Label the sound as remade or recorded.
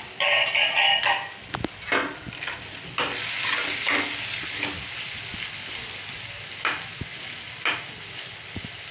recorded